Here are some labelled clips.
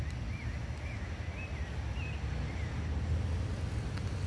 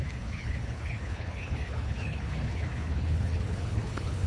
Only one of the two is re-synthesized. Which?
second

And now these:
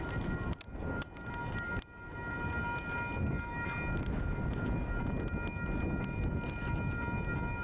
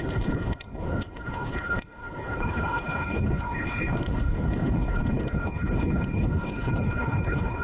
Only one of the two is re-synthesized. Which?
second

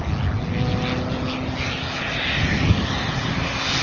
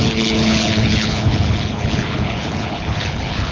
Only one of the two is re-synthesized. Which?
second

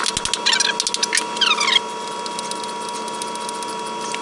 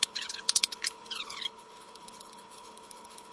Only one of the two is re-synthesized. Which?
second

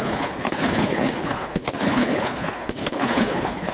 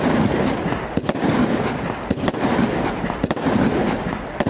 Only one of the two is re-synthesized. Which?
first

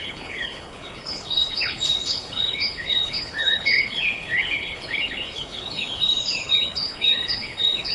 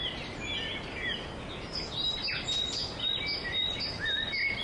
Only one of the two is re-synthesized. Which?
first